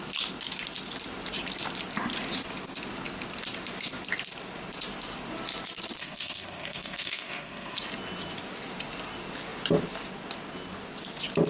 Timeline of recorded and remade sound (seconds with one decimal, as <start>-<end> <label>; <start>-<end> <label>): 0.0-6.0 recorded; 6.0-7.8 remade; 7.8-11.5 recorded